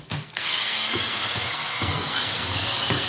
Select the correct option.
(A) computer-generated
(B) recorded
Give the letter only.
A